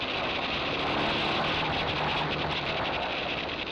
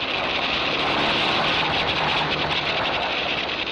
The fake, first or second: second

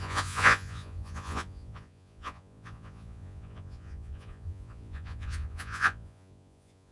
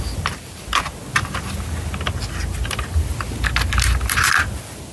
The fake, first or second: first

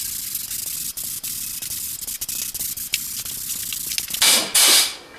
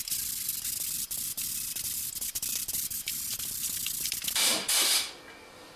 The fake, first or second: second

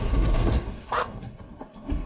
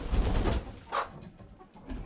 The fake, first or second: first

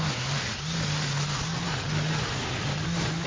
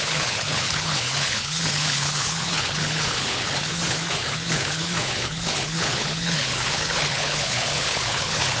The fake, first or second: second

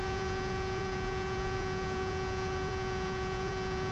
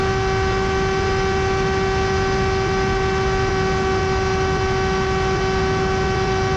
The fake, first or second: first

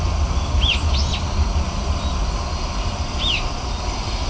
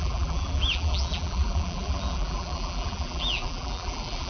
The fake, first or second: second